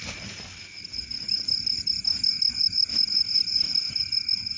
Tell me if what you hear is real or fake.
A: real